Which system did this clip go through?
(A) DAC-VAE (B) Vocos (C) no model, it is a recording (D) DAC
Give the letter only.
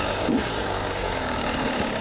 D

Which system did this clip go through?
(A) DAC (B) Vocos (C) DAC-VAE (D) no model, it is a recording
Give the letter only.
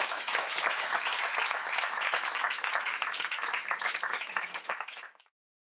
C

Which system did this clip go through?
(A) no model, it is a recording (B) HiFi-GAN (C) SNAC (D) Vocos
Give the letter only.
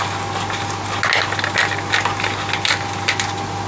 A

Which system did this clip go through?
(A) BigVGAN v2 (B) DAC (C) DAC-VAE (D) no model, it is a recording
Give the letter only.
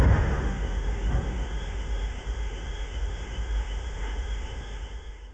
C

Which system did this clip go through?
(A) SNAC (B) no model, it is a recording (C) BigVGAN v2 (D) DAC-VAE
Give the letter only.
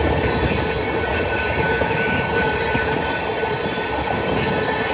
B